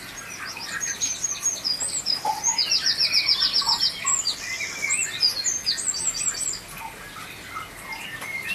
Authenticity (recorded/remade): recorded